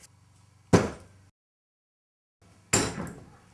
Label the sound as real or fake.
real